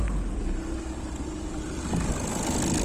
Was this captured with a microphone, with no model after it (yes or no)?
yes